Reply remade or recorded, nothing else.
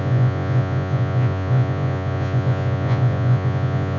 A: remade